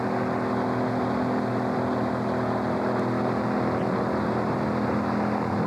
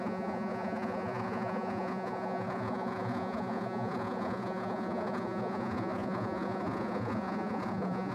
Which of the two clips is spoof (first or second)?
second